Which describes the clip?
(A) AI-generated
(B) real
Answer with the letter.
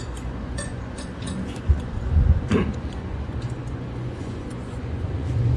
A